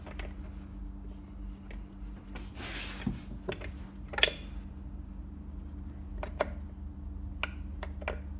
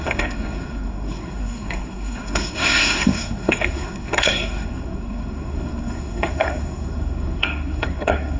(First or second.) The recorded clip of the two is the first